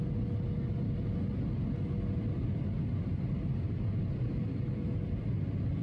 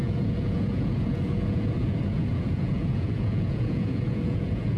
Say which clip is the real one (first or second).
first